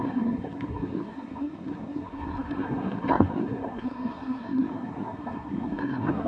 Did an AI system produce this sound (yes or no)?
yes